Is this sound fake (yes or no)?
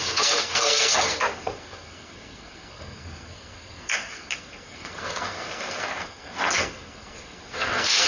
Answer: yes